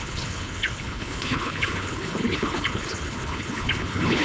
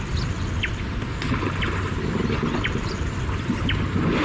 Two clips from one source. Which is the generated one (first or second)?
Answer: first